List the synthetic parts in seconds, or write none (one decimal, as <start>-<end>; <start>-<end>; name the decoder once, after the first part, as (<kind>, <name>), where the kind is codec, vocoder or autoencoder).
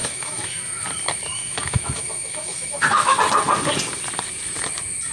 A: 0.0-0.6 (autoencoder, DAC-VAE); 1.3-3.2